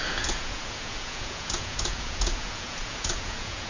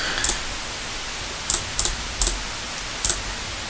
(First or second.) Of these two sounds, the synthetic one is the first